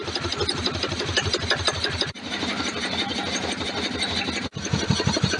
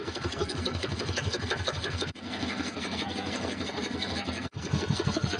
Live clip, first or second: first